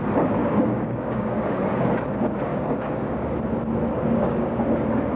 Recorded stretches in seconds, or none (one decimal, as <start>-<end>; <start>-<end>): 0.0-0.4; 1.9-2.5; 3.3-3.9; 4.7-5.2